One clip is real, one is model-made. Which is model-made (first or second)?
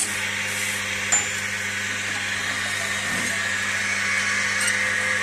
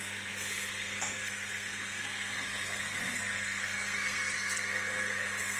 second